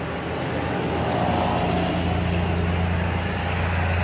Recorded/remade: recorded